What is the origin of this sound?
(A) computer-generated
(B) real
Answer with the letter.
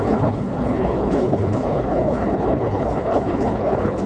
A